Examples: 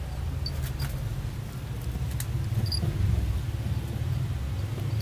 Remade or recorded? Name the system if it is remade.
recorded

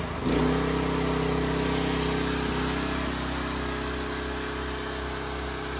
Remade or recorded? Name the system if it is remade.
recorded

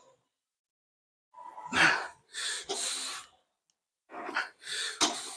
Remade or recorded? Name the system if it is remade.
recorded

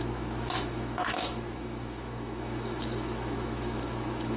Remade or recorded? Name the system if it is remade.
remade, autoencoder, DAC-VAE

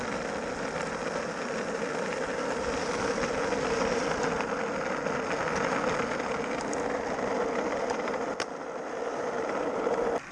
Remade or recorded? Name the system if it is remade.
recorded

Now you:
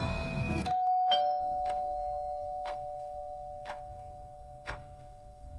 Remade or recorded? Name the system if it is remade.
remade, codec, SNAC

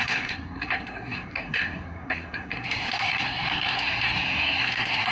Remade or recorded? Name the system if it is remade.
remade, codec, SNAC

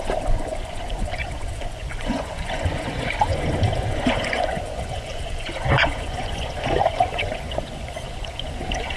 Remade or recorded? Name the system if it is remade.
remade, vocoder, Vocos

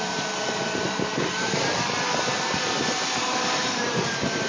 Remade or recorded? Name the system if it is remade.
remade, vocoder, BigVGAN v2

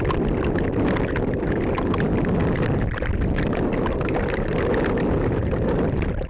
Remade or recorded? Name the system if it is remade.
recorded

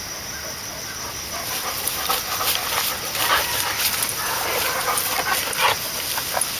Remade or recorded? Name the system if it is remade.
recorded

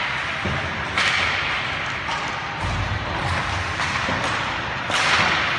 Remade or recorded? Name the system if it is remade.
recorded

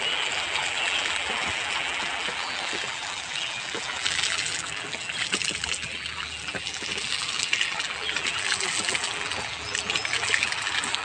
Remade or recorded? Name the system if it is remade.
remade, vocoder, BigVGAN v2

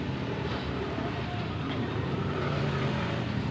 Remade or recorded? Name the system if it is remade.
remade, vocoder, BigVGAN v2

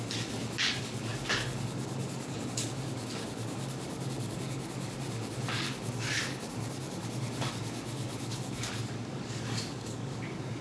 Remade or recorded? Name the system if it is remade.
remade, codec, DAC